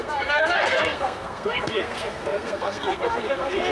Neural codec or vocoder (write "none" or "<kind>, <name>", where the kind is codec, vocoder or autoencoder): codec, SNAC